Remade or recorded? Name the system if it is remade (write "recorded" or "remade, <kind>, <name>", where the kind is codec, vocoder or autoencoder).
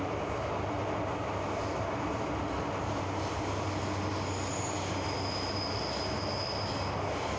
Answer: recorded